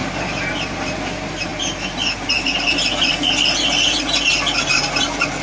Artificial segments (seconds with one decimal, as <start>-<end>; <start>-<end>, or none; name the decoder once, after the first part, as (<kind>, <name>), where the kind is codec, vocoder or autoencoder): none